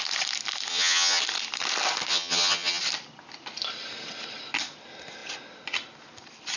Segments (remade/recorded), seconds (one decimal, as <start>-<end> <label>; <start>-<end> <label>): 0.0-0.7 recorded; 0.7-1.2 remade; 1.2-2.1 recorded; 2.1-2.8 remade; 2.8-6.6 recorded